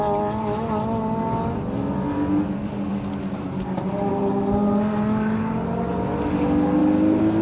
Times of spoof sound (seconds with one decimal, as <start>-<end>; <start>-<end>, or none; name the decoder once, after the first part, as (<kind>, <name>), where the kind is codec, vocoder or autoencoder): none